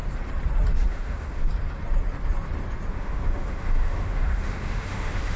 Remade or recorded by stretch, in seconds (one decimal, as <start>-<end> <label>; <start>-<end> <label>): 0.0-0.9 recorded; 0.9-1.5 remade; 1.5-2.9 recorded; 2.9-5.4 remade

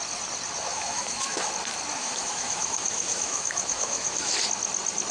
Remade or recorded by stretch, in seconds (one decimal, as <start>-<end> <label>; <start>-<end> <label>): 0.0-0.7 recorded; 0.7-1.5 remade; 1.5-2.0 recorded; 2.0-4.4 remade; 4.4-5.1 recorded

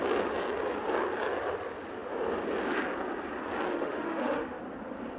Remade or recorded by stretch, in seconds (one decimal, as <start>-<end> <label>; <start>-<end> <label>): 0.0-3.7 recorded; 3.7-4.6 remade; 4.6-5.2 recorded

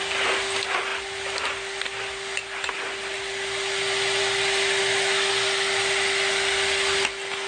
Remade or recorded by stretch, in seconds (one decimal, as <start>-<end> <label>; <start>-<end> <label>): 0.0-4.8 recorded; 4.8-5.3 remade; 5.3-7.5 recorded

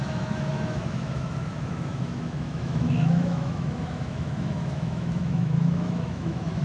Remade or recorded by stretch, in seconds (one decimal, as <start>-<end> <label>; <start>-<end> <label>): 0.0-6.6 remade

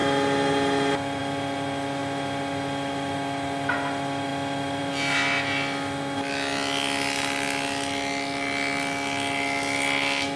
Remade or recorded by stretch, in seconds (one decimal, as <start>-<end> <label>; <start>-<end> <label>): 0.0-10.4 recorded